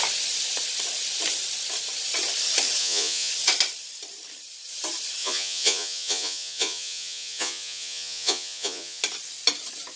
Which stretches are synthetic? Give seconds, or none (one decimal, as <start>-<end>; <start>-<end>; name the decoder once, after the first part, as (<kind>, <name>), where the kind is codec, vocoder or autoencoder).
2.8-3.3 (vocoder, Vocos); 5.2-9.0